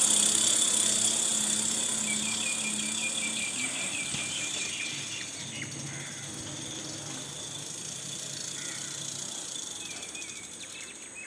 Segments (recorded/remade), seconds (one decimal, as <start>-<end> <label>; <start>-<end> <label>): 0.0-11.3 recorded